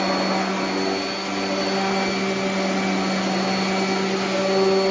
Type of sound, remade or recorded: recorded